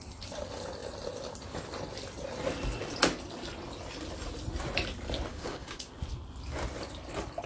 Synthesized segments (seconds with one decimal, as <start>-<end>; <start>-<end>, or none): 5.3-5.9